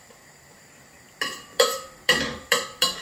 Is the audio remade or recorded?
remade